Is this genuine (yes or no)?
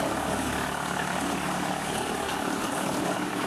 no